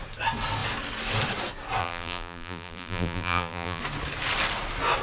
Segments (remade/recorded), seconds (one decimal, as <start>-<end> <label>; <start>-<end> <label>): 0.0-1.8 recorded; 1.8-3.8 remade; 3.8-5.0 recorded